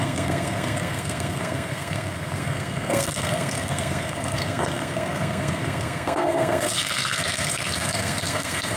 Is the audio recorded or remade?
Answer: remade